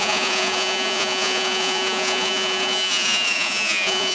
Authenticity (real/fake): fake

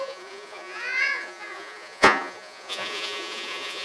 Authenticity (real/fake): fake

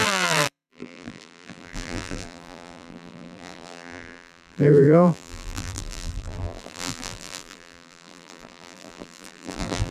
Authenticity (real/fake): fake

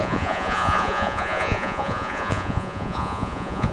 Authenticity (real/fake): fake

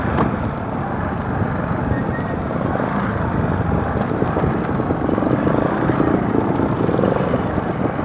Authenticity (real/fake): real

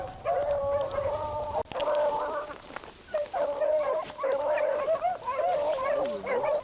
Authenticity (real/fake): real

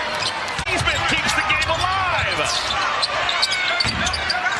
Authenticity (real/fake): fake